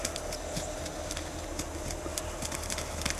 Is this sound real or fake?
real